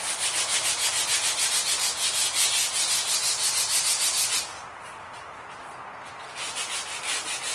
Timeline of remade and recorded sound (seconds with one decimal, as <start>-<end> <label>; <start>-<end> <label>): 0.0-7.5 recorded